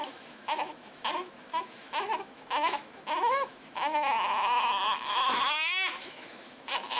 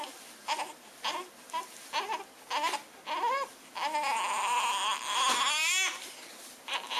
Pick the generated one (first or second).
first